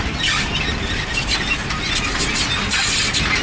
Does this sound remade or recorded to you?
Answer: recorded